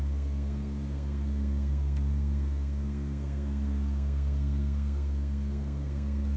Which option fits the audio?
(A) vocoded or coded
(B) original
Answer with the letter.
A